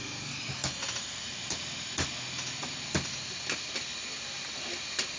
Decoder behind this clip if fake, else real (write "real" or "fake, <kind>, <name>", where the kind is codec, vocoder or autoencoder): real